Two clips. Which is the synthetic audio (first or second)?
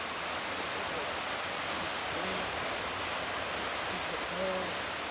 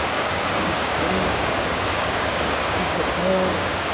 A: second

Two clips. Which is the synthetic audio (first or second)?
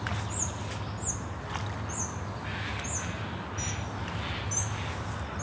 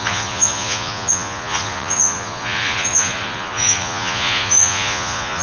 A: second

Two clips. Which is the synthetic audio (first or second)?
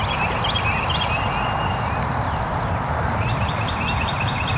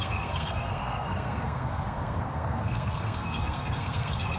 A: second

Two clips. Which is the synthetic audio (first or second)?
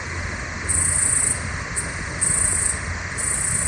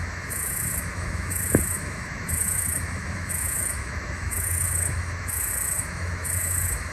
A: second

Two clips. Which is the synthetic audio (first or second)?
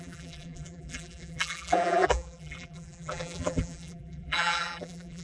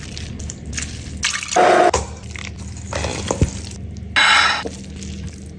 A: first